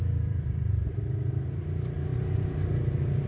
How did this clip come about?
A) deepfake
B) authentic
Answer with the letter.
A